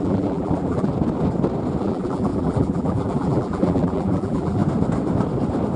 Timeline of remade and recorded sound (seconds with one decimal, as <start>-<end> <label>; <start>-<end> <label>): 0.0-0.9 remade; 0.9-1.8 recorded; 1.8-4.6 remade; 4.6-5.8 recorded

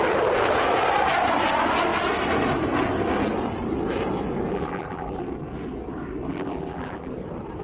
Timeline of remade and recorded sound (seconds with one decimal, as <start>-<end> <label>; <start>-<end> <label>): 0.0-4.5 recorded; 4.5-5.2 remade; 5.2-6.3 recorded; 6.3-7.1 remade; 7.1-7.6 recorded

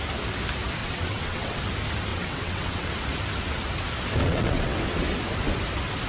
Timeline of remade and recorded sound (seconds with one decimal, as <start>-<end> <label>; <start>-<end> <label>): 0.0-0.8 recorded; 0.8-1.6 remade; 1.6-2.1 recorded; 2.1-2.9 remade; 2.9-4.2 recorded; 4.2-4.8 remade; 4.8-6.1 recorded

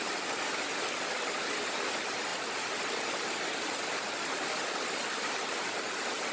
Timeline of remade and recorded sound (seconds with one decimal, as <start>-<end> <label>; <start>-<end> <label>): 0.0-6.3 remade

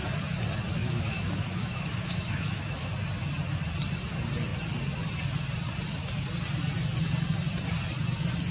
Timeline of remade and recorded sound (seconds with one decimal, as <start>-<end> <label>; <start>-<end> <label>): 0.0-0.8 recorded; 0.8-2.9 remade; 2.9-8.5 recorded

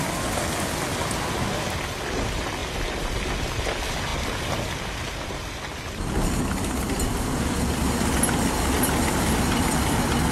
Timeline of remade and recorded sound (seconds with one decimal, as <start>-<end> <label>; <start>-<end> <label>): 0.0-10.3 recorded

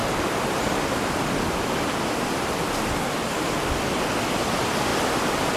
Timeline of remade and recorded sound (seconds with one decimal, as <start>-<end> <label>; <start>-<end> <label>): 0.0-3.4 remade; 3.4-4.9 recorded; 4.9-5.6 remade

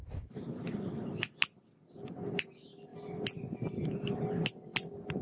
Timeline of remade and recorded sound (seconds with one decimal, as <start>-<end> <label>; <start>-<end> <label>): 0.0-1.8 remade; 1.8-2.9 recorded; 2.9-4.2 remade; 4.2-5.2 recorded